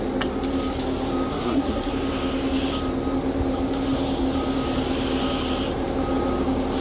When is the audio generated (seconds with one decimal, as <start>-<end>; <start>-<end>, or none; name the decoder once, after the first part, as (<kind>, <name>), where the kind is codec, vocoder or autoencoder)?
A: 1.3-1.9 (codec, SNAC)